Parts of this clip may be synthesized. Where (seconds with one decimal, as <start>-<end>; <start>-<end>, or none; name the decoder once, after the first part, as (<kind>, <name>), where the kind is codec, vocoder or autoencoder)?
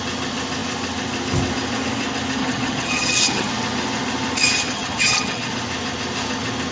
2.4-3.5 (vocoder, HiFi-GAN); 4.6-5.5